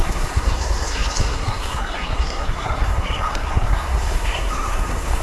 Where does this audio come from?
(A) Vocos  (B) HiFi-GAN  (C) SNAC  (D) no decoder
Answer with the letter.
C